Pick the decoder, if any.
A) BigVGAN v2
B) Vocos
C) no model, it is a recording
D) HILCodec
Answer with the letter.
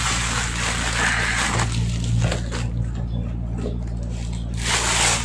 C